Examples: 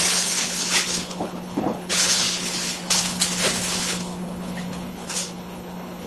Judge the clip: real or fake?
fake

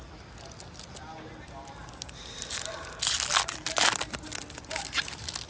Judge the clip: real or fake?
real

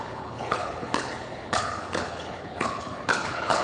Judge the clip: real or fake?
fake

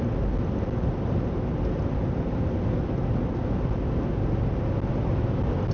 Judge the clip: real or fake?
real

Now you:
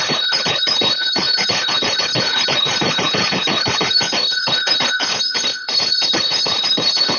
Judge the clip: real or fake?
fake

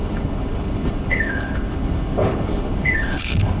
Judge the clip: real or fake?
fake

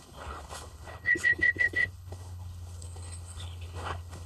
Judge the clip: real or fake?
fake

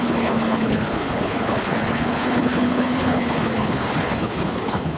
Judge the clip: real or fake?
fake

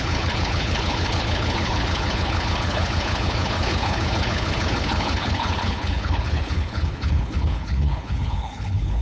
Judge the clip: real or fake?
fake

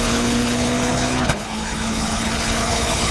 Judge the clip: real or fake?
fake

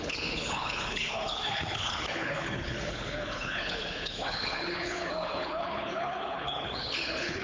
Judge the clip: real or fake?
fake